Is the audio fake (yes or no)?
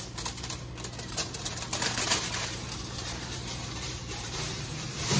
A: yes